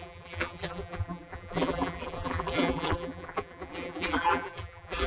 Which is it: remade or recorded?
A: remade